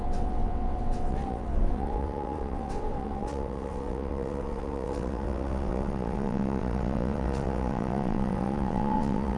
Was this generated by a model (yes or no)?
yes